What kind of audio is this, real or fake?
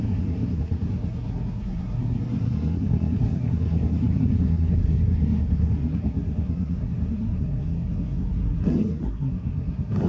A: fake